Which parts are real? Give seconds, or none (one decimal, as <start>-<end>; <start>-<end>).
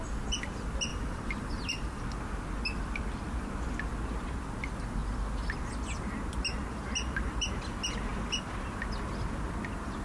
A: 0.0-0.9; 2.0-10.0